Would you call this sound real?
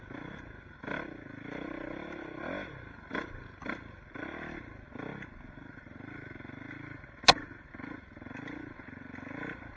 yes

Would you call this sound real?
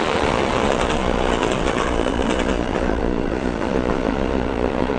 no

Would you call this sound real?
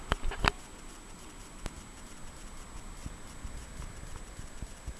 yes